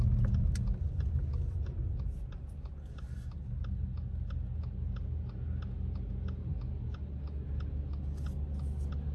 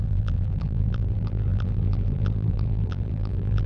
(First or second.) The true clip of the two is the first